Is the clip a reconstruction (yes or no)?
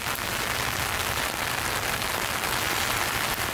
no